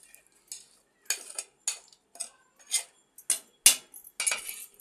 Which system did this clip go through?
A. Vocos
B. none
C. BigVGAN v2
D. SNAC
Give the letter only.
B